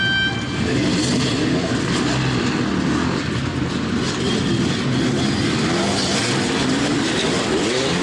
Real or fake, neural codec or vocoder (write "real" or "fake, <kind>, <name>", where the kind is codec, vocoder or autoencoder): real